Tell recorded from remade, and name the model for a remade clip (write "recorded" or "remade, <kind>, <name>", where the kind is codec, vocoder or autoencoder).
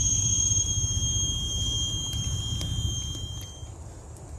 remade, vocoder, BigVGAN v2